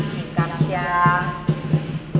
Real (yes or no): yes